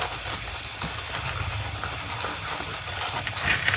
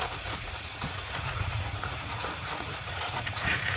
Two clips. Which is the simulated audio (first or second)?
second